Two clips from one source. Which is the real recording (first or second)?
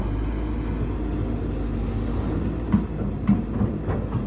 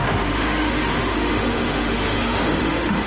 first